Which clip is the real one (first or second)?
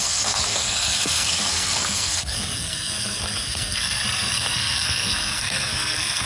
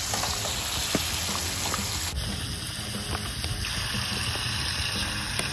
second